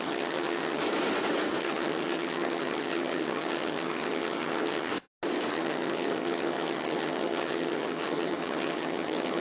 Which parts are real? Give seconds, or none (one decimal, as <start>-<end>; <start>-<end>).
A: 0.8-1.6; 4.9-5.5